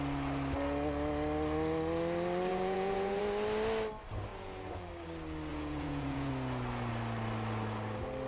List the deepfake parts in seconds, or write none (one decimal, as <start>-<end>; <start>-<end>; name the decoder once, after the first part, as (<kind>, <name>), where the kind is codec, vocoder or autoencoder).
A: 2.5-3.2 (vocoder, Vocos); 4.3-4.9; 5.5-6.3